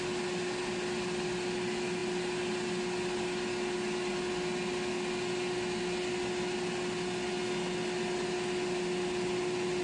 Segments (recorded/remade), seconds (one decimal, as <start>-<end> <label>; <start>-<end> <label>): 0.0-9.8 recorded